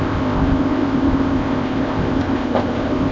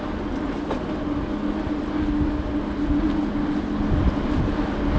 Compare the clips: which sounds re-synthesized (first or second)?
first